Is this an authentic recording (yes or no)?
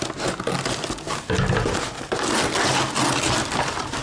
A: yes